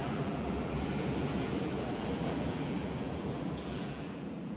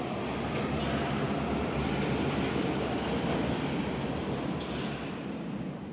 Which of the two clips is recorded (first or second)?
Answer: second